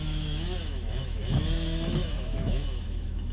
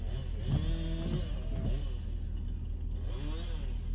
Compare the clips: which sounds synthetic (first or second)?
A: first